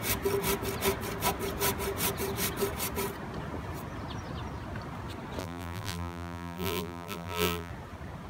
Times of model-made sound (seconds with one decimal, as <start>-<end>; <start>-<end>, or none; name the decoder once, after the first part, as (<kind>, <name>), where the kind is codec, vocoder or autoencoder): 5.4-7.7 (vocoder, BigVGAN v2)